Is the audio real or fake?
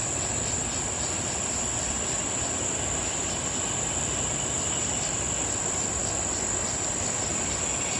fake